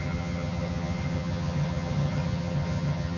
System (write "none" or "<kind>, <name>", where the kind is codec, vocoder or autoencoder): vocoder, HiFi-GAN